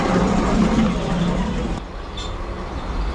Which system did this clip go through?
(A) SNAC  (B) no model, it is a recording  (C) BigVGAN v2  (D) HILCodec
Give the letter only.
B